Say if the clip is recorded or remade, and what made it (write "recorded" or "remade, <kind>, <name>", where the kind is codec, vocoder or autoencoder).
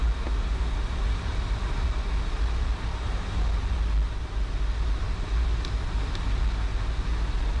recorded